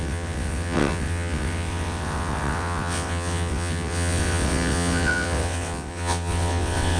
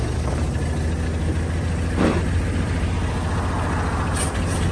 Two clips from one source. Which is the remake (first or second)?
first